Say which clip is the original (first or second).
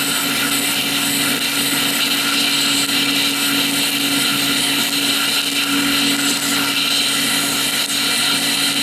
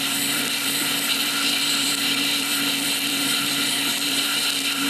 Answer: first